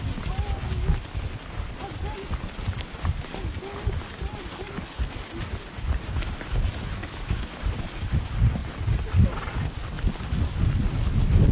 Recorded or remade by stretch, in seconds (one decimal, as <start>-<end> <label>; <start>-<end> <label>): 0.0-7.0 recorded; 7.0-7.6 remade; 7.6-11.5 recorded